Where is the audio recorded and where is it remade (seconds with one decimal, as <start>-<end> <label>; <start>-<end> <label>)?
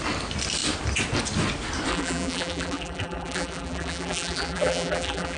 0.0-1.9 recorded; 1.9-5.4 remade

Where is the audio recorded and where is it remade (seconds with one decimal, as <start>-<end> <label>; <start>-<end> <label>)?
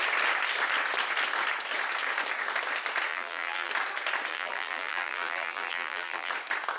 0.0-3.1 recorded; 3.1-3.7 remade; 3.7-4.3 recorded; 4.3-6.3 remade; 6.3-6.8 recorded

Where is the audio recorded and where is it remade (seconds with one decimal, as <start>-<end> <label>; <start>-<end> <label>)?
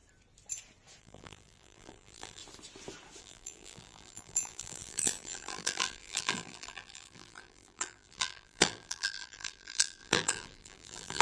0.0-1.0 recorded; 1.0-2.4 remade; 2.4-3.2 recorded; 3.2-11.2 remade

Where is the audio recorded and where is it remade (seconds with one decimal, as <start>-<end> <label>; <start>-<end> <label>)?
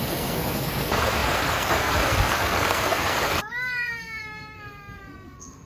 0.0-5.7 remade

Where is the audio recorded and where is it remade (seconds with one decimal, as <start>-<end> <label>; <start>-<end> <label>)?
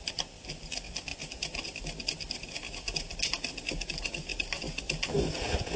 0.0-5.8 recorded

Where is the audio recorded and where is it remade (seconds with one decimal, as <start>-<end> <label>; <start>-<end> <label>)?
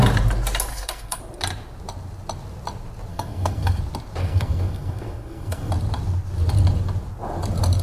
0.0-0.7 recorded; 0.7-1.2 remade; 1.2-3.1 recorded; 3.1-3.8 remade; 3.8-4.2 recorded; 4.2-5.7 remade; 5.7-7.8 recorded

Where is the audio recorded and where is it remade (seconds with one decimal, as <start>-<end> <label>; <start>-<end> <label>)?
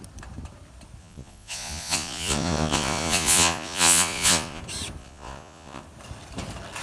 0.0-1.0 recorded; 1.0-4.6 remade; 4.6-5.0 recorded; 5.0-5.8 remade; 5.8-6.8 recorded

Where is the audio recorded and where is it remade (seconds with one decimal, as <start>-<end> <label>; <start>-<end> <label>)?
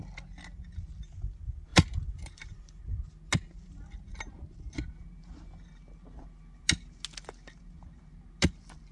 0.0-1.7 recorded; 1.7-2.8 remade; 2.8-8.9 recorded